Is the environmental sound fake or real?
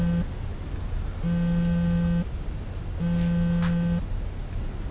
real